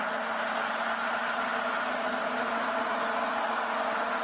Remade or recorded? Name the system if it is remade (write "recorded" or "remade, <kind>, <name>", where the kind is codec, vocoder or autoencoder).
recorded